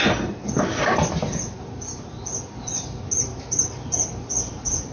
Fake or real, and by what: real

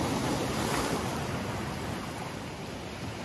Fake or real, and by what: real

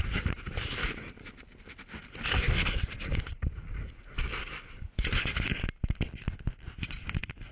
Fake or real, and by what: real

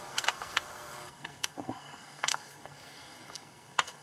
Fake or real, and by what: fake, codec, SNAC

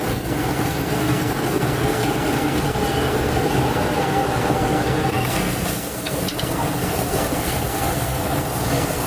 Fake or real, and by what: fake, codec, SNAC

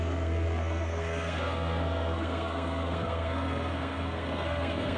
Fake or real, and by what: fake, codec, SNAC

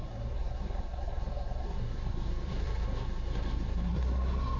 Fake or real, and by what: fake, codec, SNAC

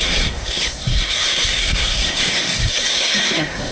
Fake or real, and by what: fake, codec, SNAC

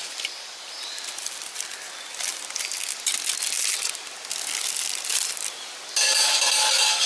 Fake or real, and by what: real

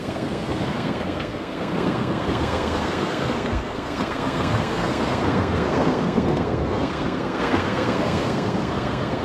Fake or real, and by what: fake, codec, SNAC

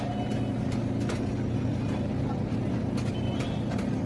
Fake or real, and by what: real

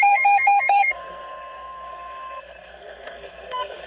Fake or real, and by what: fake, codec, SNAC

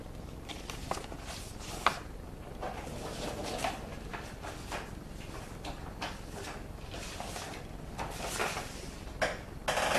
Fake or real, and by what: real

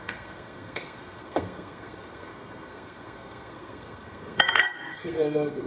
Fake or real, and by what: fake, codec, SNAC